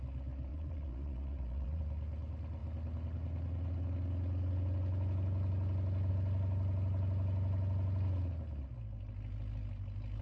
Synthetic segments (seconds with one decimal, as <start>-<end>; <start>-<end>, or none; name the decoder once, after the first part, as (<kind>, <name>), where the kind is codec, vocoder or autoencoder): 0.5-1.8 (vocoder, Vocos)